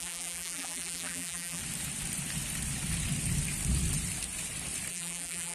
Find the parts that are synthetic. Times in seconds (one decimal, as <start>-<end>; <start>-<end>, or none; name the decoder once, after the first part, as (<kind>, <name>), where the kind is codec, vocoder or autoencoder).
0.0-1.6 (vocoder, BigVGAN v2); 4.9-5.5